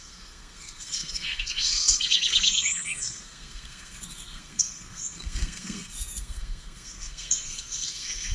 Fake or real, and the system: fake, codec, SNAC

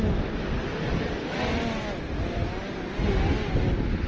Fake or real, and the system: real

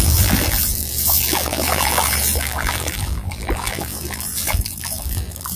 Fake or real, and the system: fake, vocoder, BigVGAN v2